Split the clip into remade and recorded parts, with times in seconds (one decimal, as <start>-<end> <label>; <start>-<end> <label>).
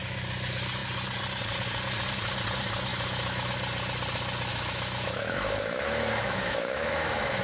0.0-2.9 recorded; 2.9-3.5 remade; 3.5-4.5 recorded; 4.5-7.4 remade